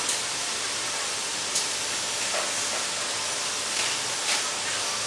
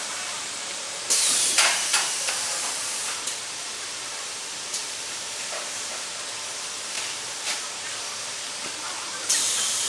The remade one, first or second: second